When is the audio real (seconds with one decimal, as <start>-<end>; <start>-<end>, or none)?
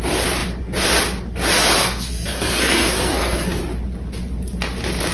0.0-1.8; 3.6-5.1